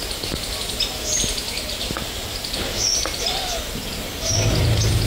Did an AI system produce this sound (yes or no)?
no